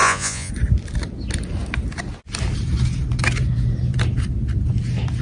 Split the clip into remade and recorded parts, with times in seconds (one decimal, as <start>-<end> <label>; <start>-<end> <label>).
0.0-0.5 remade; 0.5-5.2 recorded